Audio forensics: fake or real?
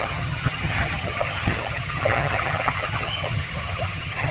fake